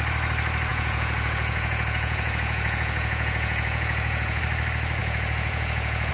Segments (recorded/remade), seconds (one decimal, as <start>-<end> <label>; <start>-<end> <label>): 0.0-0.7 recorded; 0.7-4.4 remade; 4.4-5.0 recorded; 5.0-6.1 remade